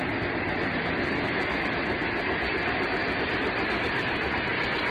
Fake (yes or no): no